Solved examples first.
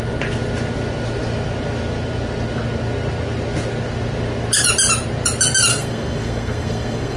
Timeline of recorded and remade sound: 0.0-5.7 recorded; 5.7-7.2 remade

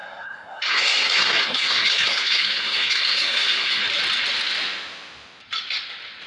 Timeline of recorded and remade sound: 0.0-3.8 remade; 3.8-6.3 recorded

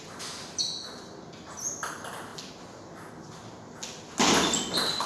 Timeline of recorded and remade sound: 0.0-5.1 recorded

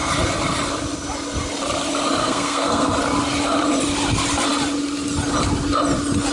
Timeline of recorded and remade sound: 0.0-2.2 recorded; 2.2-2.9 remade; 2.9-6.3 recorded

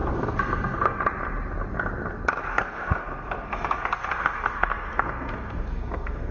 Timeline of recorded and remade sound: 0.0-1.0 remade; 1.0-2.5 recorded; 2.5-6.3 remade

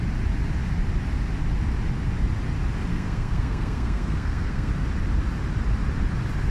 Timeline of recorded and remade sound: 0.0-2.9 recorded; 2.9-4.7 remade; 4.7-6.5 recorded